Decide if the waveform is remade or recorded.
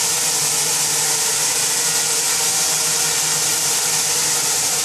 recorded